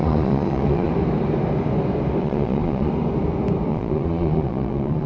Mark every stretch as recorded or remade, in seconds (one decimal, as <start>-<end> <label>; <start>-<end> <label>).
0.0-0.9 remade; 0.9-2.2 recorded; 2.2-2.9 remade; 2.9-3.7 recorded; 3.7-5.1 remade